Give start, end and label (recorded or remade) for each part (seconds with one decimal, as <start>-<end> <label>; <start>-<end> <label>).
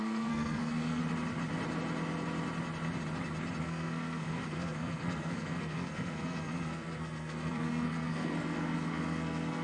0.0-1.0 remade; 1.0-3.6 recorded; 3.6-9.6 remade